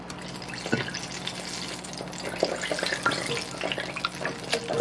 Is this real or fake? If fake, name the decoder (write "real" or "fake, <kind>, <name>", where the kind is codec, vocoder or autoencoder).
real